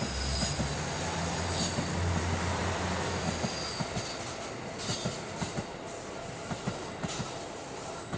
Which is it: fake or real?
real